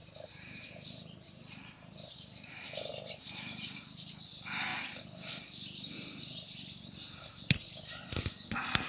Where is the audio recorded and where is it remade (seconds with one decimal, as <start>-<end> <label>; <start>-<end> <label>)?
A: 0.0-2.5 remade; 2.5-2.9 recorded; 2.9-4.1 remade; 4.1-8.9 recorded